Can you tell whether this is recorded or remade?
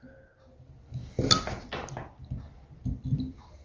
recorded